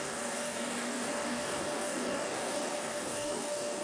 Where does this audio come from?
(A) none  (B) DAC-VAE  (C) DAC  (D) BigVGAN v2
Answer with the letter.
C